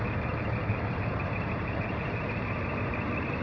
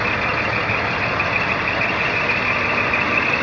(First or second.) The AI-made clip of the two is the first